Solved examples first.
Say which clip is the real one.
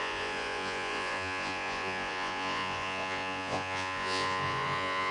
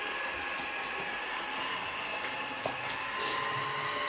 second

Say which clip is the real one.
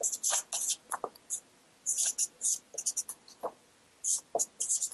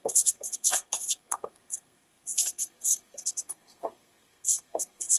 first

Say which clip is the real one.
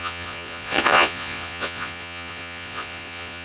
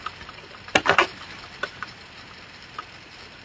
second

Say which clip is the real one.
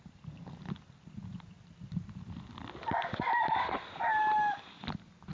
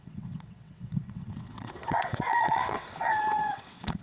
first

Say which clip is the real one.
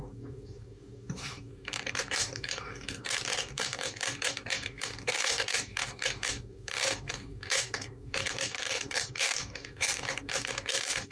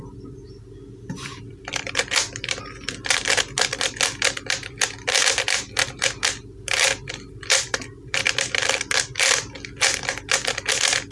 second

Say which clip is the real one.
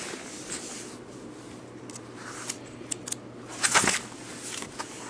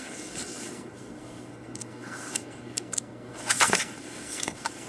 first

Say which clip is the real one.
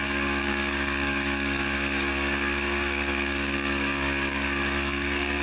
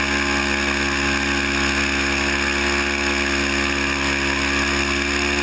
second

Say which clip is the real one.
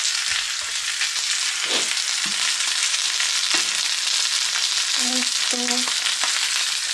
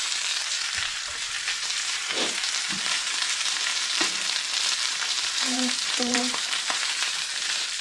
first